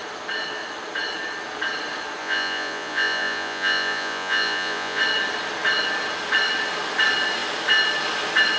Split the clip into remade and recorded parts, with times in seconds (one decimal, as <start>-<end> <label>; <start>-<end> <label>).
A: 0.0-2.2 recorded; 2.2-5.0 remade; 5.0-8.6 recorded